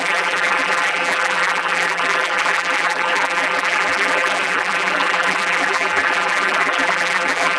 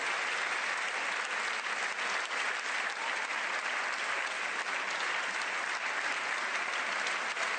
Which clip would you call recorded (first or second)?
second